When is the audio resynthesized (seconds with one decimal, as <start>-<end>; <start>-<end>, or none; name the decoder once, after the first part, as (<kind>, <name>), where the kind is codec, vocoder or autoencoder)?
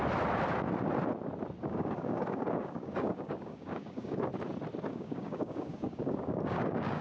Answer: 1.6-4.3 (codec, DAC); 4.9-7.0